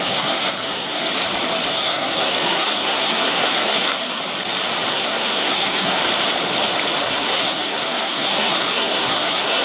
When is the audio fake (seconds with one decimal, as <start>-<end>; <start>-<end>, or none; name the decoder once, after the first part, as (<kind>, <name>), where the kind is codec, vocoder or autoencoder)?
0.0-1.1 (codec, SNAC); 1.7-4.2; 4.9-6.0; 7.0-9.6